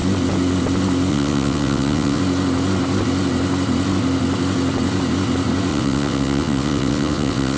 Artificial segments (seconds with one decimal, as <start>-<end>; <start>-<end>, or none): 1.1-2.2; 5.7-7.6